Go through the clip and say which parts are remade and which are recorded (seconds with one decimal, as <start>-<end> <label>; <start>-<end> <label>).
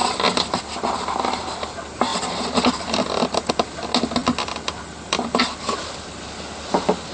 0.0-0.6 remade; 0.6-2.1 recorded; 2.1-3.5 remade; 3.5-4.2 recorded; 4.2-5.4 remade; 5.4-7.1 recorded